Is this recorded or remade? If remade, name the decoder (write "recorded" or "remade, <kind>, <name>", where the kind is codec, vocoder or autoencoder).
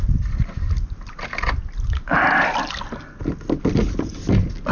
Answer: recorded